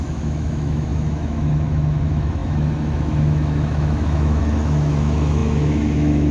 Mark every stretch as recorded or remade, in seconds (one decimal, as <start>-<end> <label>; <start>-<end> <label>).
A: 0.0-6.3 remade